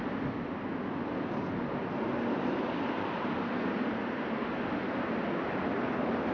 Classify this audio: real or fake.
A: real